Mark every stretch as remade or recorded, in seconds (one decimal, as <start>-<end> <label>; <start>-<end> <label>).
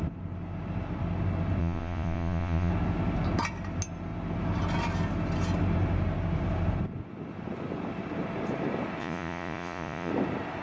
0.0-1.6 recorded; 1.6-2.7 remade; 2.7-9.0 recorded; 9.0-10.1 remade; 10.1-10.6 recorded